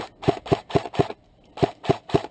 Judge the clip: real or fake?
real